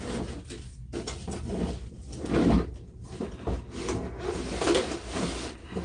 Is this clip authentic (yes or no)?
yes